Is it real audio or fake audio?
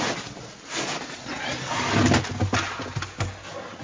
real